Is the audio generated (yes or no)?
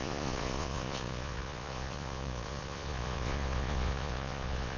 yes